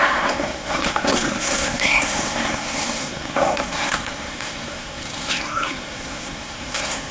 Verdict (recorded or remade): remade